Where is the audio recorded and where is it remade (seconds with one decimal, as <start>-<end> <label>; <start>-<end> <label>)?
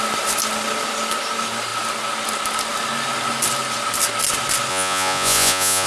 0.0-4.7 recorded; 4.7-5.9 remade